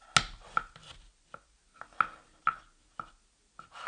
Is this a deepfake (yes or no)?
no